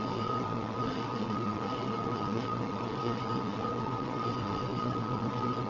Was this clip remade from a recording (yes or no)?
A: yes